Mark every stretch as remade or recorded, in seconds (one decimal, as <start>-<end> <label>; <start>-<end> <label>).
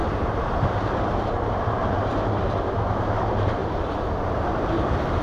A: 0.0-3.6 remade; 3.6-4.3 recorded; 4.3-5.2 remade